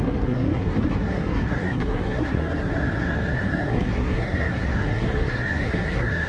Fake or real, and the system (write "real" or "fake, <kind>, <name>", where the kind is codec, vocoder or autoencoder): fake, codec, SNAC